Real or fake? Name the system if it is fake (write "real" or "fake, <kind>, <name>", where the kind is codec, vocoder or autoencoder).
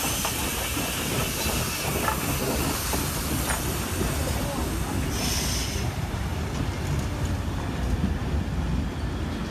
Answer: real